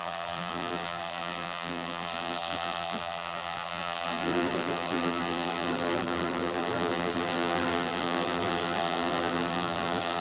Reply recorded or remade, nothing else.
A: remade